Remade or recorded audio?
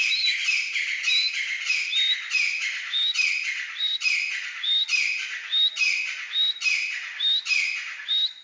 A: recorded